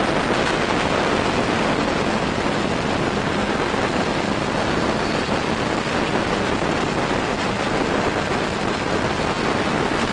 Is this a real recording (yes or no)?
yes